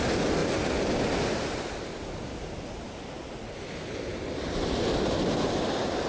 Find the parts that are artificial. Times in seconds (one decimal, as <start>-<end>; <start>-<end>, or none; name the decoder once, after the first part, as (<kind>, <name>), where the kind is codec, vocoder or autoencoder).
none